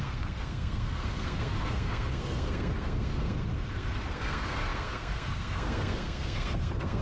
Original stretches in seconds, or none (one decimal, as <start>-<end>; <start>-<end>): none